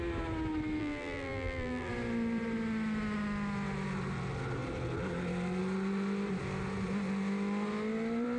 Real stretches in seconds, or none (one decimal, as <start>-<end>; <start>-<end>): 0.0-0.8; 1.9-8.4